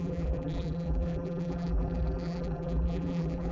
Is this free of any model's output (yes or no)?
no